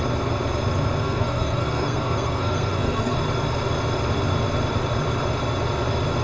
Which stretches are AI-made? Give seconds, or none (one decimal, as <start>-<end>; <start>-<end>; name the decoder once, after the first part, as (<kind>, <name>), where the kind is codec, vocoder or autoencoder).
1.0-3.2 (codec, SNAC)